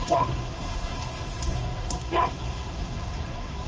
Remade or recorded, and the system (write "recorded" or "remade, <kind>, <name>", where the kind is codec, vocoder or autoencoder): remade, codec, SNAC